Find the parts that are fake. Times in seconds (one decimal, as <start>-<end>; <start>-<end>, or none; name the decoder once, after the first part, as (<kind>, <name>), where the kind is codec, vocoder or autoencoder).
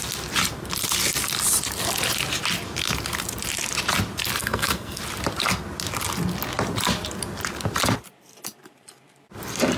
4.4-5.0 (codec, SNAC)